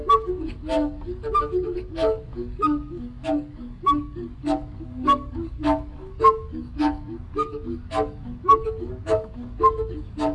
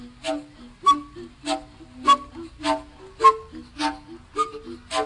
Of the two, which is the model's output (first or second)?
first